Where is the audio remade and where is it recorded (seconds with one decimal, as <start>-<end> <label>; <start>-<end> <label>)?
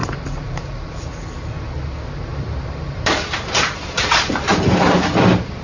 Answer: 0.0-1.1 remade; 1.1-2.3 recorded; 2.3-4.4 remade; 4.4-5.6 recorded